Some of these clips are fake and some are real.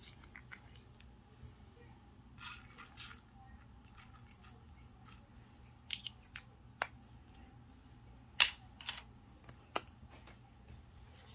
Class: real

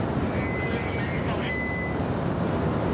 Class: real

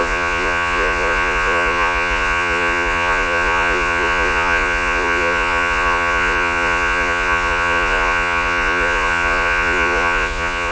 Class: fake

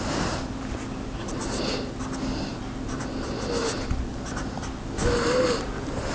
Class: real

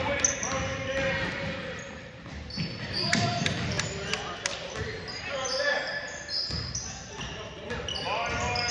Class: real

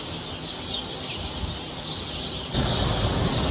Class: real